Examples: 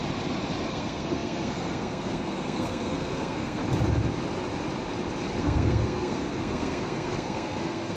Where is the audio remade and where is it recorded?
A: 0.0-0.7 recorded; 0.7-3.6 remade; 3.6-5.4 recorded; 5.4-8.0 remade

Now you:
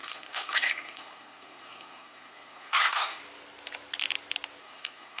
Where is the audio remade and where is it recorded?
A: 0.0-3.2 remade; 3.2-4.6 recorded; 4.6-5.2 remade

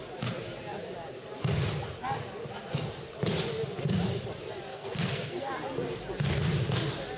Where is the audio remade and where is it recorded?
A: 0.0-4.7 recorded; 4.7-5.5 remade; 5.5-7.2 recorded

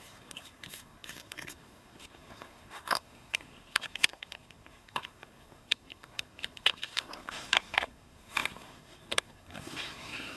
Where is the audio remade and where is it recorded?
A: 0.0-10.4 remade